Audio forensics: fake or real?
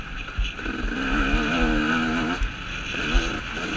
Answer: real